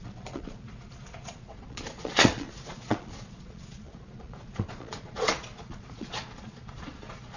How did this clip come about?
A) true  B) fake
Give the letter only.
B